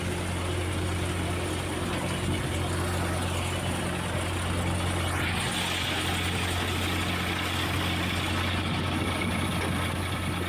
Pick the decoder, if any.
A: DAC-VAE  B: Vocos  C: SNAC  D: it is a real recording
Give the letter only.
D